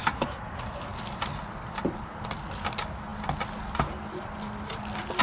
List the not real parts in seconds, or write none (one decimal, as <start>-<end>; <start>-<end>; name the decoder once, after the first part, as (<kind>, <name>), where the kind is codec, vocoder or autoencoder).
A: 0.9-2.0 (vocoder, BigVGAN v2)